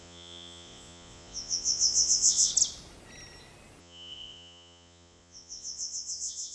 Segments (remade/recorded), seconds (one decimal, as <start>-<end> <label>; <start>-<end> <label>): 0.0-2.5 remade; 2.5-3.8 recorded; 3.8-6.5 remade